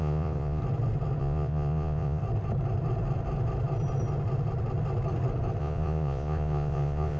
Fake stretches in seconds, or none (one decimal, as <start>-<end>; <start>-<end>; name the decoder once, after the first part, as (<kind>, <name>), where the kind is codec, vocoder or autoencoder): 0.0-0.6 (vocoder, Vocos); 1.2-2.2; 5.6-7.2

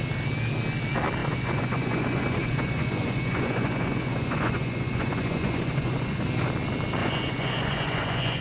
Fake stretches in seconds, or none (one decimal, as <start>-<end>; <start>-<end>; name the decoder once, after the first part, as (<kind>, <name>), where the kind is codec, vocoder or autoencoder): 1.2-6.2 (vocoder, Vocos); 7.0-8.4

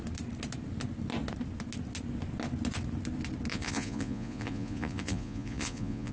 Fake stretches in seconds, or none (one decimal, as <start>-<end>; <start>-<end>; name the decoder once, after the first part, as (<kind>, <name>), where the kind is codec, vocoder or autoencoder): 3.5-6.1 (vocoder, Vocos)

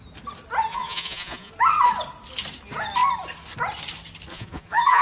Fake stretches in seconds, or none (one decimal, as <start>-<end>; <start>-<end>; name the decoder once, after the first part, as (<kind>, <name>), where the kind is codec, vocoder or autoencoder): 0.7-1.5 (vocoder, Vocos); 4.3-5.0

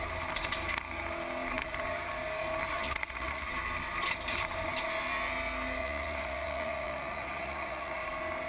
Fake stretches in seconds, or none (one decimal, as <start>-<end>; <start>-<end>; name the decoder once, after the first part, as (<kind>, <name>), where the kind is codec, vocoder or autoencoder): 2.7-3.5 (vocoder, Vocos); 5.8-8.0

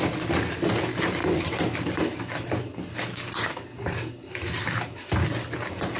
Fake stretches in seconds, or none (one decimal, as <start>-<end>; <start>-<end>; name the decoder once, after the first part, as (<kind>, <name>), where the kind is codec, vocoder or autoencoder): none